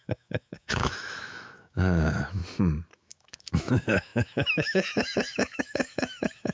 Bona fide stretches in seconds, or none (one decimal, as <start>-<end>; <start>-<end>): 2.4-2.9